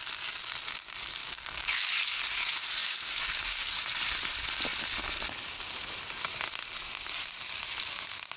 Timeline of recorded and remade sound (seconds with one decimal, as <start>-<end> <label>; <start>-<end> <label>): 0.0-1.2 recorded; 1.2-2.2 remade; 2.2-2.8 recorded; 2.8-3.8 remade; 3.8-8.4 recorded